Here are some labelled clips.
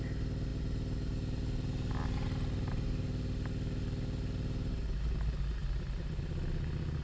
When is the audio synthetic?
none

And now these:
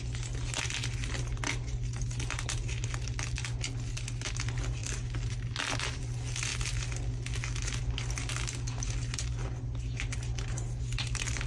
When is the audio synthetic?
none